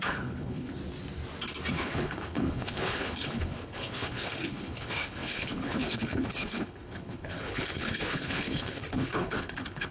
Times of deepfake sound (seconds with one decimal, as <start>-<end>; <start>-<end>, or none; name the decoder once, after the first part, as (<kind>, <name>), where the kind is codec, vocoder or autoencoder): 0.0-0.8 (codec, HILCodec); 1.7-9.9